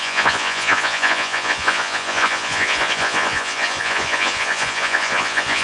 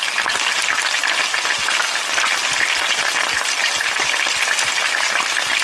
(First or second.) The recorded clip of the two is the second